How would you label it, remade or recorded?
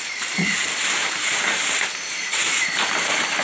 remade